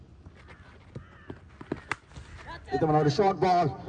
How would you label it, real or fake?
real